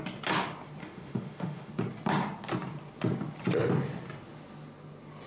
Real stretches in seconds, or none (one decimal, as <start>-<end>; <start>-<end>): 0.0-0.8; 1.7-5.3